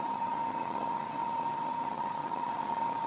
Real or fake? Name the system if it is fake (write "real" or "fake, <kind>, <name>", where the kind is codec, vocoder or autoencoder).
fake, vocoder, HiFi-GAN